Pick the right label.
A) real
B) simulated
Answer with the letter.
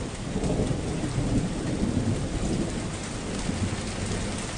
A